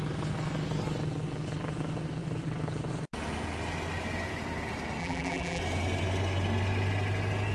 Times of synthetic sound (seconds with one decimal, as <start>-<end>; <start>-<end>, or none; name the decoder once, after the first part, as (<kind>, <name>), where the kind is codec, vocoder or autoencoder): 5.0-5.6 (vocoder, BigVGAN v2)